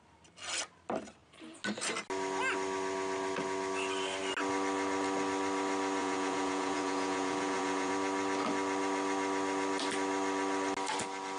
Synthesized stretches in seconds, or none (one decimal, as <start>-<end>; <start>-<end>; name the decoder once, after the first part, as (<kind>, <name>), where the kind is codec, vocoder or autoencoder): 6.0-7.9 (vocoder, Vocos)